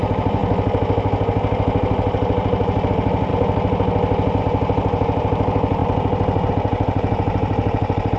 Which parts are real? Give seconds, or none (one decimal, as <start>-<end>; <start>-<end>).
0.4-2.9; 3.3-4.4; 5.8-6.5